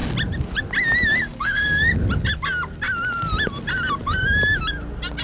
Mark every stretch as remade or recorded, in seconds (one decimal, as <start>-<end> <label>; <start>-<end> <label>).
0.0-1.2 recorded; 1.2-1.9 remade; 1.9-5.2 recorded